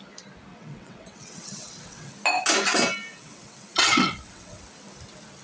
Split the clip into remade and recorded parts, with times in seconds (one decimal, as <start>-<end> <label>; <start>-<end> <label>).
0.0-0.5 recorded; 0.5-2.1 remade; 2.1-3.1 recorded; 3.1-4.6 remade; 4.6-5.4 recorded